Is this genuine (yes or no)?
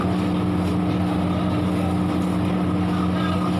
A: yes